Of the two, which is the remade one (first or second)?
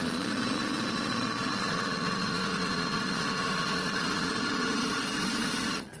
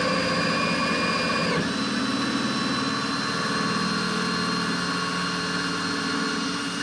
first